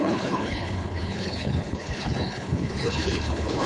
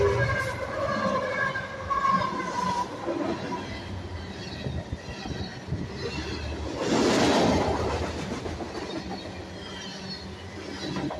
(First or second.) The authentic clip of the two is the second